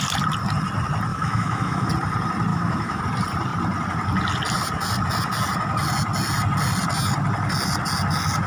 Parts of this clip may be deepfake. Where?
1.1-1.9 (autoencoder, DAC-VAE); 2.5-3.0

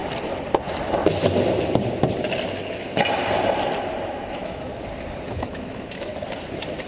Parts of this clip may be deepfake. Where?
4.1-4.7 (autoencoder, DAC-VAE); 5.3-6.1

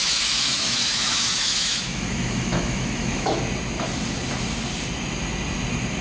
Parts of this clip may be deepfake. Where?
0.0-3.4 (autoencoder, DAC-VAE)